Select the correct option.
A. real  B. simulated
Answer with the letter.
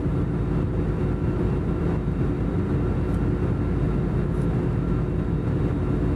A